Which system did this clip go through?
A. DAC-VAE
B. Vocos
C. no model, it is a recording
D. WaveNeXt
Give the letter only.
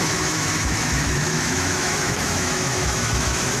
A